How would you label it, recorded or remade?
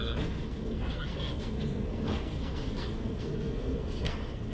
remade